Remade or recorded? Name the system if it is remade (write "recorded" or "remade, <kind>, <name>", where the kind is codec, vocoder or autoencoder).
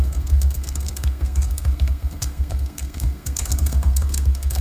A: remade, codec, SNAC